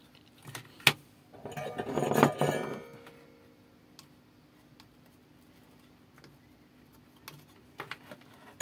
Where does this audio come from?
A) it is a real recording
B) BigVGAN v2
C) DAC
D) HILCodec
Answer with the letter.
A